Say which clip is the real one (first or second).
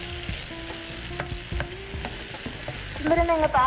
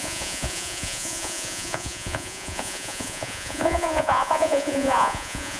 first